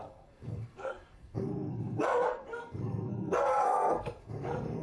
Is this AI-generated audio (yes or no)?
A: yes